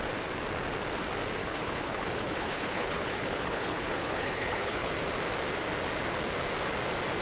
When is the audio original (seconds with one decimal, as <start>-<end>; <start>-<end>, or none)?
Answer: 0.0-1.4; 4.9-7.2